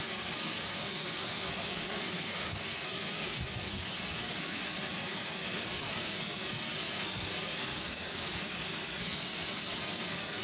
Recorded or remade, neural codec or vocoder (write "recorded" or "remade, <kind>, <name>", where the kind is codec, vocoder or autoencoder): remade, codec, SNAC